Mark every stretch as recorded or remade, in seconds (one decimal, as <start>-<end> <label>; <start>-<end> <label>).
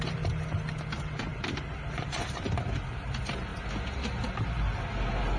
0.0-5.4 recorded